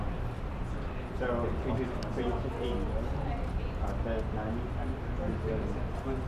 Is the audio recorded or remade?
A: recorded